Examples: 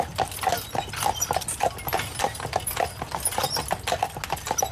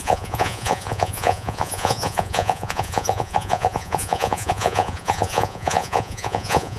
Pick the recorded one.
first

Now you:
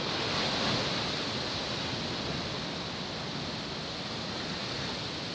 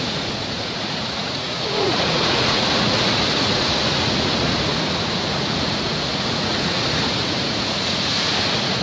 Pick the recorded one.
first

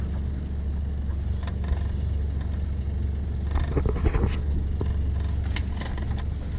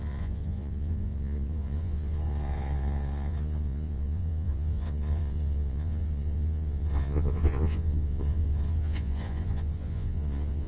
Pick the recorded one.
first